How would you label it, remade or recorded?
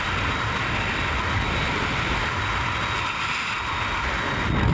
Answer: recorded